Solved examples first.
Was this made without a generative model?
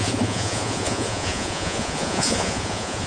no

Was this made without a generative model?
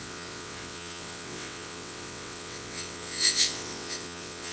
no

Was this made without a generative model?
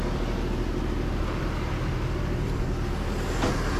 yes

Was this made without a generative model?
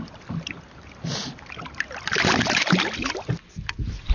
no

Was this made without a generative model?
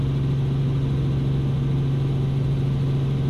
yes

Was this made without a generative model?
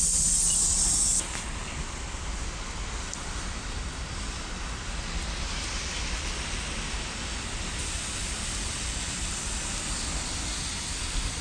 yes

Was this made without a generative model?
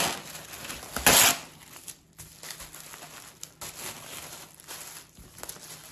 yes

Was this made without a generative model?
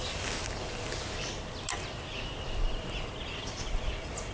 yes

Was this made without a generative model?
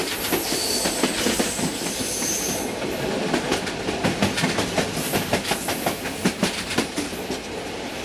yes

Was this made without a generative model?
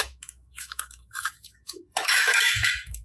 no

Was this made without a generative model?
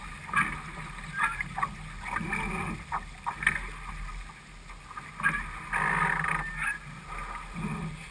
yes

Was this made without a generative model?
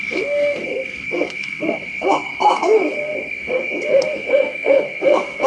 no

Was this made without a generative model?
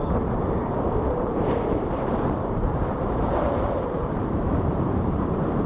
no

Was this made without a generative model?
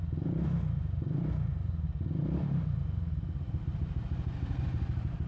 yes